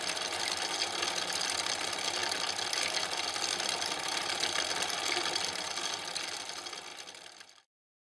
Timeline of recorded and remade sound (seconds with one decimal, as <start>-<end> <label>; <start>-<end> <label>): 0.0-2.2 recorded; 2.2-5.8 remade; 5.8-6.9 recorded; 6.9-7.6 remade; 7.6-8.0 recorded